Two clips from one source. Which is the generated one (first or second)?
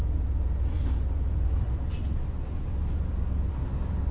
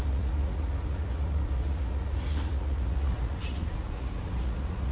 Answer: second